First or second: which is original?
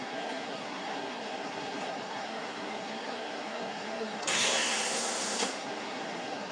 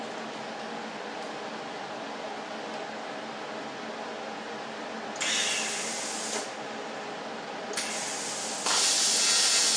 second